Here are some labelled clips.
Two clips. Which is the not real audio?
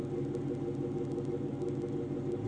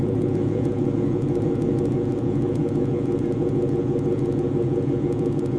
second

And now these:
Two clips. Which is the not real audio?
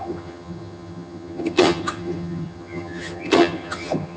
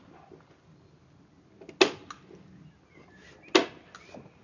first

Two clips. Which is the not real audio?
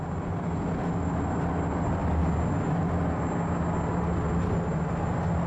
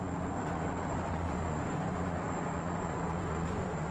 second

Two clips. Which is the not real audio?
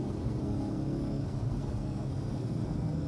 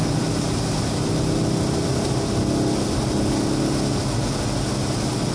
first